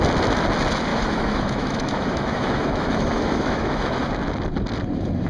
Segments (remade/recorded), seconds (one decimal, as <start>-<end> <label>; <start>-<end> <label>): 0.0-0.9 recorded; 0.9-4.1 remade; 4.1-5.3 recorded